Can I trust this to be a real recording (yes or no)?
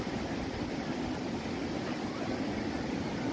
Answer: yes